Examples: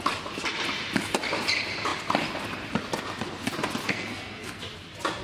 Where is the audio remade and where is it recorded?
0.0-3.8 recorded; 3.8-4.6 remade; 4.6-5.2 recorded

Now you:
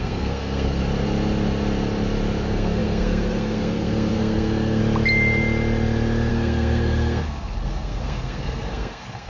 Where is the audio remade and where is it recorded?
0.0-0.8 remade; 0.8-2.4 recorded; 2.4-4.8 remade; 4.8-6.3 recorded; 6.3-9.3 remade

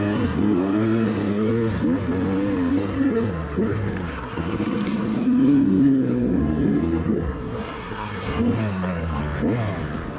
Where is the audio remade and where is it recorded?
0.0-1.5 remade; 1.5-2.7 recorded; 2.7-9.2 remade; 9.2-10.2 recorded

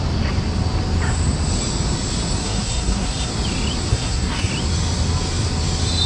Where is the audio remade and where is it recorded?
0.0-2.4 recorded; 2.4-3.3 remade; 3.3-3.9 recorded; 3.9-4.5 remade; 4.5-6.1 recorded

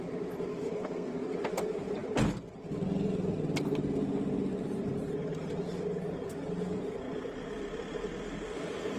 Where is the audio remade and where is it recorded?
0.0-0.5 recorded; 0.5-1.1 remade; 1.1-9.0 recorded

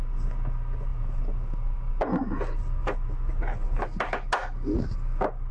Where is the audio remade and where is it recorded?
0.0-5.5 recorded

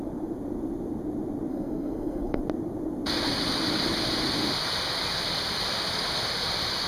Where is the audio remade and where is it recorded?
0.0-1.5 recorded; 1.5-2.4 remade; 2.4-6.9 recorded